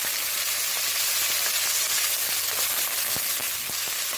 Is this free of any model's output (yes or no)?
yes